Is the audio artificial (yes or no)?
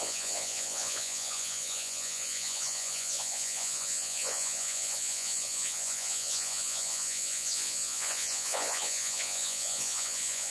yes